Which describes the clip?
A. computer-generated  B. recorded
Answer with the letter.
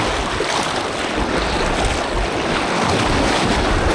B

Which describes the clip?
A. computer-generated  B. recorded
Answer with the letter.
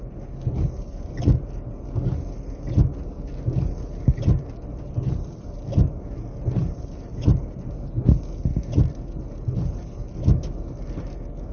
B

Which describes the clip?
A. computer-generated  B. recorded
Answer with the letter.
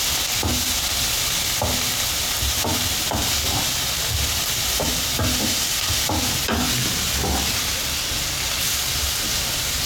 B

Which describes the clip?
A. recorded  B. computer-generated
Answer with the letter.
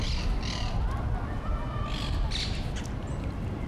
A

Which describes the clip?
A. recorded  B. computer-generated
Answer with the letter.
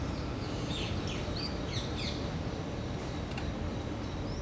A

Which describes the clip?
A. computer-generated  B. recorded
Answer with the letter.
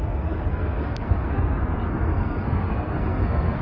A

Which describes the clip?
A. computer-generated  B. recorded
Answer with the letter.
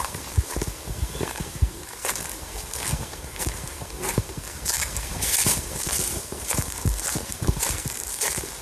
A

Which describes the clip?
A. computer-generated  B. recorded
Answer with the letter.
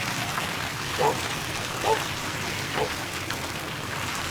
A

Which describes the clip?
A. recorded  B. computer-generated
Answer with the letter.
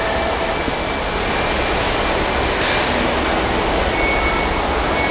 A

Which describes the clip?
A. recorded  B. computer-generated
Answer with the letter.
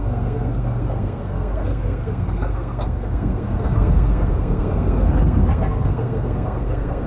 B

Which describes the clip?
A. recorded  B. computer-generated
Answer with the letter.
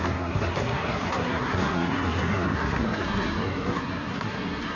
B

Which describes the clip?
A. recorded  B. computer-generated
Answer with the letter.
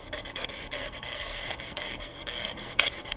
B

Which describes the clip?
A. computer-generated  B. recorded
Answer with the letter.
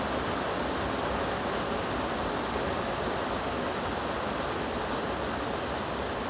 B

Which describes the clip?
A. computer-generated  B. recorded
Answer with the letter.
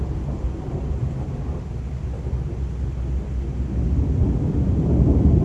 B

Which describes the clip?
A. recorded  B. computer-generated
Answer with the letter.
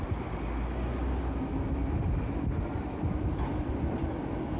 A